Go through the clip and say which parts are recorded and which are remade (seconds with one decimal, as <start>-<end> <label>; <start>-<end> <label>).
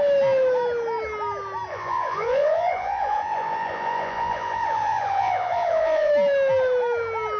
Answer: 0.0-1.7 recorded; 1.7-6.1 remade; 6.1-7.4 recorded